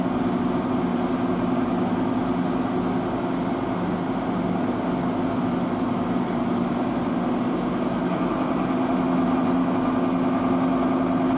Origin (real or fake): real